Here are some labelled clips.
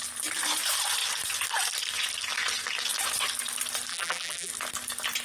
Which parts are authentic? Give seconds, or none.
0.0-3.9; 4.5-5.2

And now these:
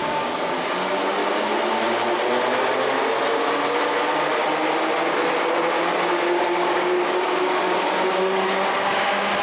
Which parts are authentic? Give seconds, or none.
1.2-5.8

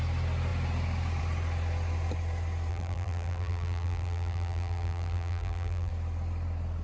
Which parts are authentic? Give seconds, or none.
0.0-2.7; 5.9-6.8

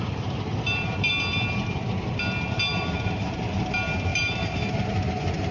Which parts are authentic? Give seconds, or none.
1.1-2.7; 3.4-4.1; 5.1-5.5

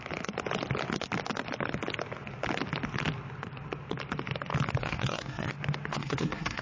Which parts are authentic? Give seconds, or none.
0.0-4.8; 5.5-5.9

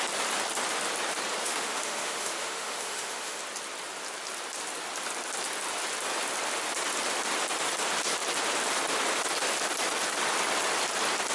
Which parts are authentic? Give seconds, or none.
0.0-1.4; 3.4-11.3

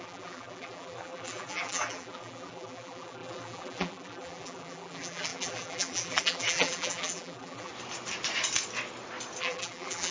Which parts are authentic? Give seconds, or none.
7.7-9.4